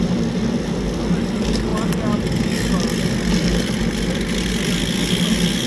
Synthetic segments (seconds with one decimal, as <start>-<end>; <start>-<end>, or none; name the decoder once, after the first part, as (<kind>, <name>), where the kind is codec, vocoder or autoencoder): none